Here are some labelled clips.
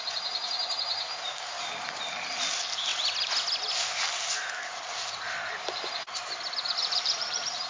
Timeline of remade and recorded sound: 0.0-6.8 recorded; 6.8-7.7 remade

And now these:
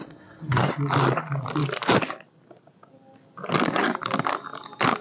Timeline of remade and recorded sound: 0.0-0.7 remade; 0.7-5.0 recorded

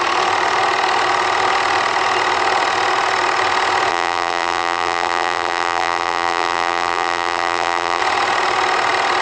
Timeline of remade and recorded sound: 0.0-3.9 recorded; 3.9-8.0 remade; 8.0-9.2 recorded

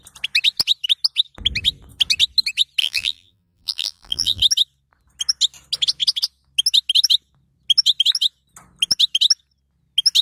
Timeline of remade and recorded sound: 0.0-2.8 recorded; 2.8-4.4 remade; 4.4-10.2 recorded

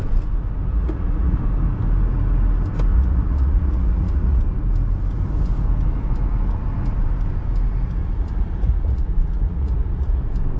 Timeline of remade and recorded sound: 0.0-0.7 recorded; 0.7-1.4 remade; 1.4-2.9 recorded; 2.9-4.4 remade; 4.4-8.0 recorded; 8.0-10.2 remade; 10.2-10.6 recorded

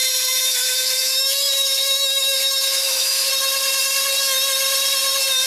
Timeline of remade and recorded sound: 0.0-3.3 remade; 3.3-5.5 recorded

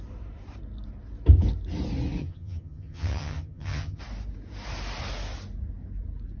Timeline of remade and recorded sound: 0.0-2.2 recorded; 2.2-4.0 remade; 4.0-6.4 recorded